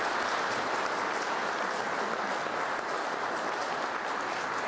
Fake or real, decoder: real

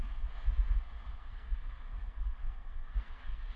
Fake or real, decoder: fake, codec, SNAC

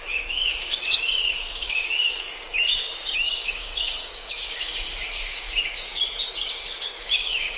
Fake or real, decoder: fake, codec, DAC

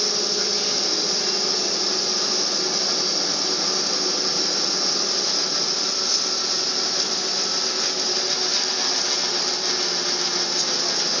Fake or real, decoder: real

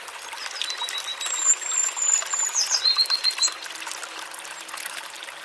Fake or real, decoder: real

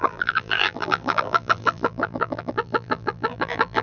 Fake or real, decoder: fake, vocoder, BigVGAN v2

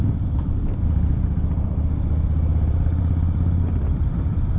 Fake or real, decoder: fake, vocoder, BigVGAN v2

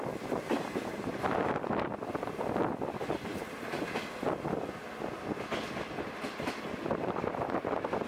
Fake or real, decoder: real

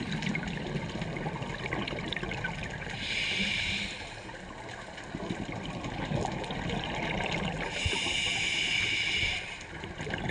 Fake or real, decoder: real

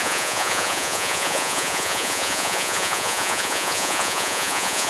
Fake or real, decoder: fake, vocoder, Vocos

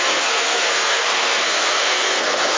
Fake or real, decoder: fake, codec, SNAC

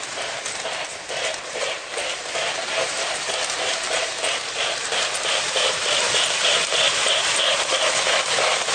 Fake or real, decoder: fake, vocoder, BigVGAN v2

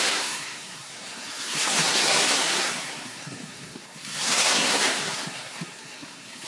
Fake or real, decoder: fake, codec, SNAC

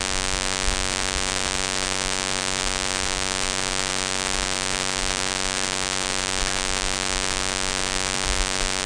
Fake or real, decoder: real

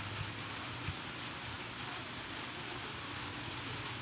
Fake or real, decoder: real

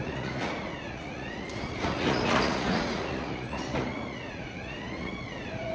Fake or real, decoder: fake, vocoder, Vocos